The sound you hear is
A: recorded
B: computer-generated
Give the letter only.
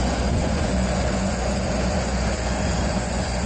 B